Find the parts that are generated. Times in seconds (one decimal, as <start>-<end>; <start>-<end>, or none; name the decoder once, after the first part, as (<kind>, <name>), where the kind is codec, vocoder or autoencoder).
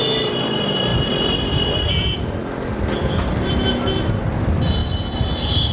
none